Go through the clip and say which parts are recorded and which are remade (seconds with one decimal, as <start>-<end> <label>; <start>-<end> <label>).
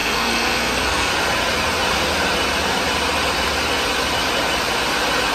0.0-1.1 remade; 1.1-5.3 recorded